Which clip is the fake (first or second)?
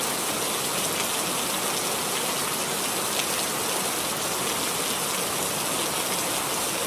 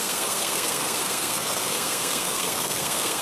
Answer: second